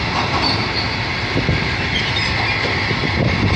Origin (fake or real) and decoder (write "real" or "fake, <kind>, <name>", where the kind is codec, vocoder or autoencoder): real